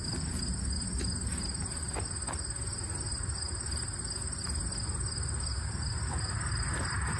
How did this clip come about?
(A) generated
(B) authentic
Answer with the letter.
B